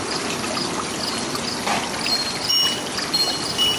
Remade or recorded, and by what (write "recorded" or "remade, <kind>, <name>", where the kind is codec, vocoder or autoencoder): recorded